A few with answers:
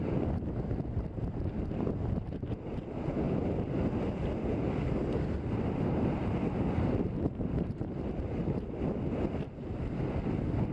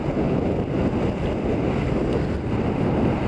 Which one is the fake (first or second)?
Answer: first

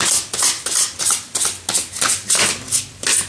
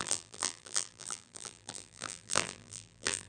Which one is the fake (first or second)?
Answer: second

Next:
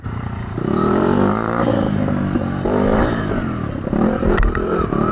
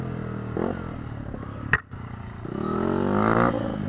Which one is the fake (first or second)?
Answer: first